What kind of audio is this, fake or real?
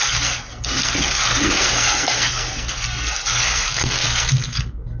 fake